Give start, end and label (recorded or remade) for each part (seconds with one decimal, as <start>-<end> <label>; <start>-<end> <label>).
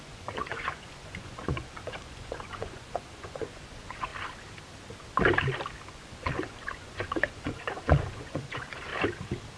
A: 0.0-4.1 remade; 4.1-5.9 recorded; 5.9-8.9 remade; 8.9-9.6 recorded